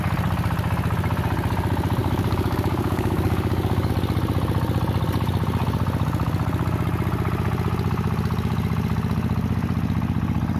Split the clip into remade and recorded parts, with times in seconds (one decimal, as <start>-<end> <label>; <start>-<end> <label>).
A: 0.0-2.0 recorded; 2.0-3.9 remade; 3.9-10.6 recorded